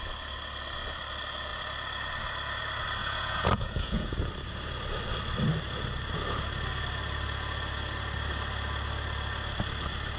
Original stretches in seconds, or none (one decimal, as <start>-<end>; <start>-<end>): 0.0-3.0; 4.3-10.2